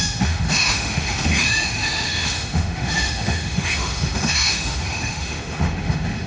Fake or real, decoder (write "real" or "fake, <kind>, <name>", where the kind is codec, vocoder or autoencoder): fake, autoencoder, DAC-VAE